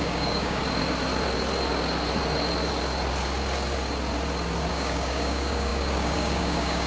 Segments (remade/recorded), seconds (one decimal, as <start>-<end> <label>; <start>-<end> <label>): 0.0-0.6 remade; 0.6-4.7 recorded; 4.7-6.9 remade